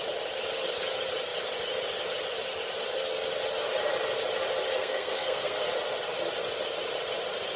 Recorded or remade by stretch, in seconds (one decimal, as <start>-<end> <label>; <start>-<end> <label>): 0.0-4.8 recorded; 4.8-5.7 remade; 5.7-7.6 recorded